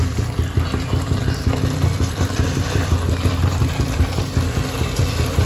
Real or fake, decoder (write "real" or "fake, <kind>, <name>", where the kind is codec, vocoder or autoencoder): fake, vocoder, BigVGAN v2